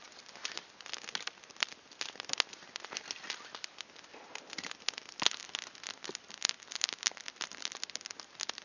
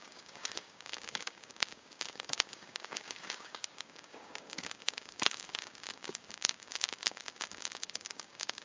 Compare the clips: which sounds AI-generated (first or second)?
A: second